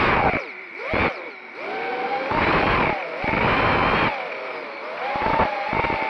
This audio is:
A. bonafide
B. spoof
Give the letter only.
A